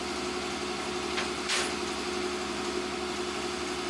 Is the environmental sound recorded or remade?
recorded